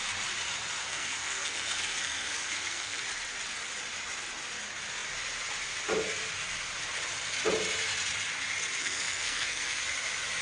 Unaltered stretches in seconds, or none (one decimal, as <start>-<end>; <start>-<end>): 0.0-0.8; 3.0-8.8; 9.8-10.4